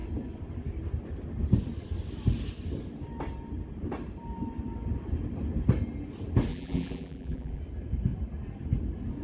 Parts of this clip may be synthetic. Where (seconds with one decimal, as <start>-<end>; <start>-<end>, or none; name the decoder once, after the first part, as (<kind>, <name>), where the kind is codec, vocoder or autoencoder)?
6.5-7.6 (vocoder, BigVGAN v2)